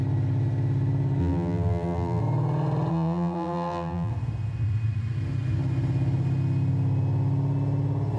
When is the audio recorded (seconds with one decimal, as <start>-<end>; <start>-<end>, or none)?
0.0-1.2; 2.2-2.9; 4.1-8.2